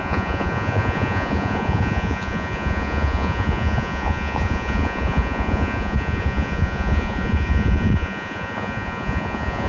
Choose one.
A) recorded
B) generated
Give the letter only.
B